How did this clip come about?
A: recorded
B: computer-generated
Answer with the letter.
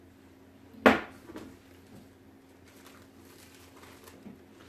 A